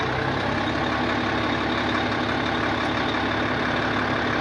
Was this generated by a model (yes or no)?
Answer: no